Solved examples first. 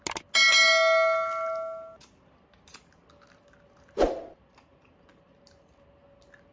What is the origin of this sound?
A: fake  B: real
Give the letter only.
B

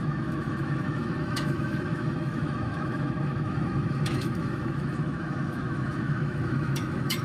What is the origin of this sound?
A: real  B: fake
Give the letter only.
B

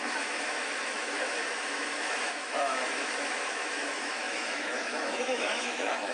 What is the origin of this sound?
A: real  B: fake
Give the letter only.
B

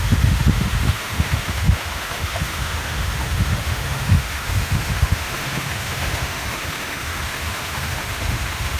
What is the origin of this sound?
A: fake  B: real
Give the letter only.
A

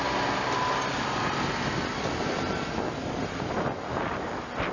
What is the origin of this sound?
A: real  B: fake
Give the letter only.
A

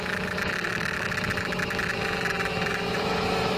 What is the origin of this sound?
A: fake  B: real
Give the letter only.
A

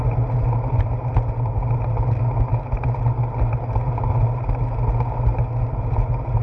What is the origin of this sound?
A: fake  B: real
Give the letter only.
B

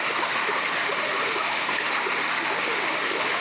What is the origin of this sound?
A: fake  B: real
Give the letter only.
A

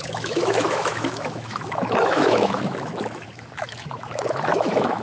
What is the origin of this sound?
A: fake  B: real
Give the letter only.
A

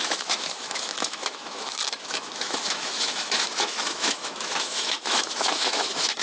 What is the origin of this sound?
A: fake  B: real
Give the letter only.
A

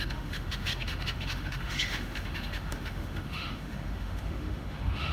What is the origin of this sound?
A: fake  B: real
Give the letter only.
A